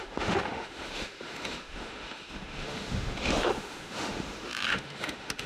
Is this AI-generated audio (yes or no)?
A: yes